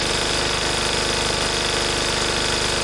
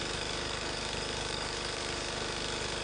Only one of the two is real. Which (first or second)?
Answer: first